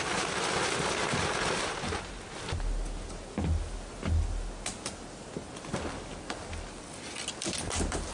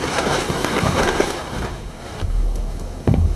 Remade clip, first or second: second